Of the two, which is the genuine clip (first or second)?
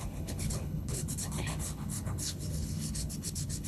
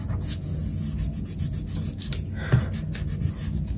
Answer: second